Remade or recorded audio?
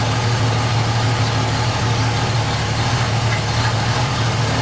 recorded